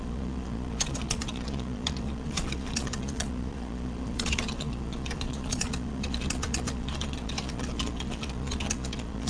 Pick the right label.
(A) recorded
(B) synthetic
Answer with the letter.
B